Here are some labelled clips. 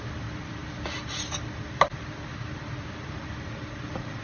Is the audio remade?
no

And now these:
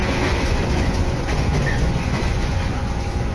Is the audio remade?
yes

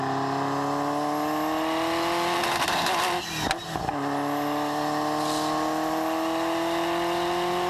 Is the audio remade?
no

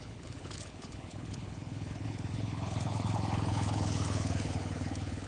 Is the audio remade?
yes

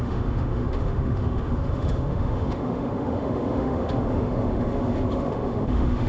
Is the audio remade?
yes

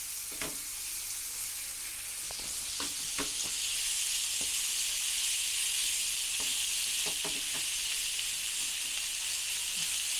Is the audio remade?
no